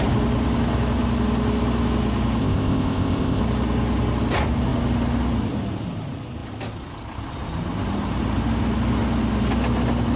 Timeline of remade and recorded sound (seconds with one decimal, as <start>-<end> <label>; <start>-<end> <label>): 0.0-2.4 recorded; 2.4-3.4 remade; 3.4-10.2 recorded